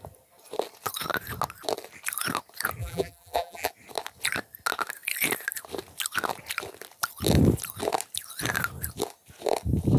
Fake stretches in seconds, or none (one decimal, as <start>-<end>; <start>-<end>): 2.8-3.7